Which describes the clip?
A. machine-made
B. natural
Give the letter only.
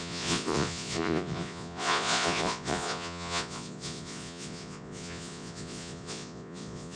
A